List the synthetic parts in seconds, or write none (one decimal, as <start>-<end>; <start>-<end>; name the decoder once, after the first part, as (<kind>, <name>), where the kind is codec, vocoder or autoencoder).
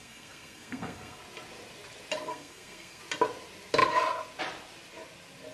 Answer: 0.0-1.2 (codec, SNAC); 2.3-3.0